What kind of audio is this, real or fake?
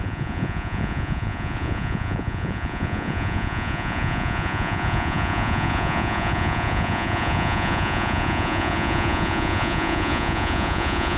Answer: fake